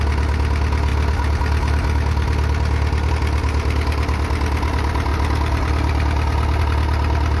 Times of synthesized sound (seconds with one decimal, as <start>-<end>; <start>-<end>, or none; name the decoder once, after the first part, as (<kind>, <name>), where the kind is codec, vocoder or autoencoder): none